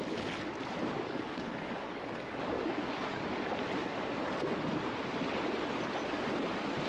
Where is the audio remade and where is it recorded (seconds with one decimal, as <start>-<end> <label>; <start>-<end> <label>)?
0.0-0.8 recorded; 0.8-3.2 remade; 3.2-6.9 recorded